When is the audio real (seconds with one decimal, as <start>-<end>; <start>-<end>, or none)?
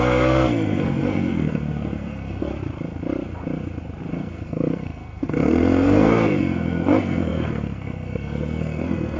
2.5-4.1